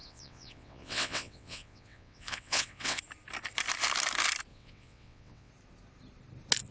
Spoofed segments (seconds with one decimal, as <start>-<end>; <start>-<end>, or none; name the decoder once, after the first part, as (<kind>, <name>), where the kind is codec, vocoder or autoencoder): 0.0-3.0 (vocoder, WaveNeXt); 4.5-5.5